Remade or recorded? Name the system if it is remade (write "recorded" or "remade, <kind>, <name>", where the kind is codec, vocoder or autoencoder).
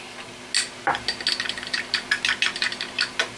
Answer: recorded